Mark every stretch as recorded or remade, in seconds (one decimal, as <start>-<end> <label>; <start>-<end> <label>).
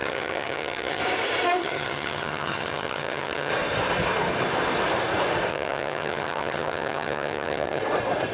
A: 0.0-1.0 remade; 1.0-1.6 recorded; 1.6-3.5 remade; 3.5-5.5 recorded; 5.5-7.8 remade; 7.8-8.3 recorded